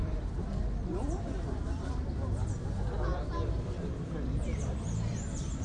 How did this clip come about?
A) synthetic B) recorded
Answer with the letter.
A